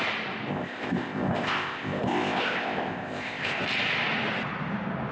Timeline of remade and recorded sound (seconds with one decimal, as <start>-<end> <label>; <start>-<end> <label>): 0.0-0.5 recorded; 0.5-3.6 remade; 3.6-5.1 recorded